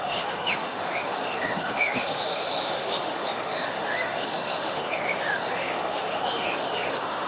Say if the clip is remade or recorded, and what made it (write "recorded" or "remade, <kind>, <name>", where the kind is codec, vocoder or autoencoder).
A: remade, autoencoder, DAC-VAE